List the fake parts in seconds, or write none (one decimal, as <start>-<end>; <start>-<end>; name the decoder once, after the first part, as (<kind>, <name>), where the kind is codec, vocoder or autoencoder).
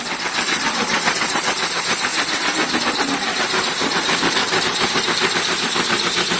none